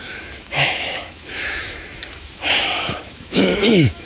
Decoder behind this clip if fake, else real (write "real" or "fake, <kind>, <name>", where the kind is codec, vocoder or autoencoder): fake, autoencoder, DAC-VAE